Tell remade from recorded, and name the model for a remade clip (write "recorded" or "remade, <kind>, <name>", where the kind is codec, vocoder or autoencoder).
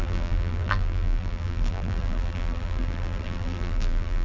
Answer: remade, vocoder, BigVGAN v2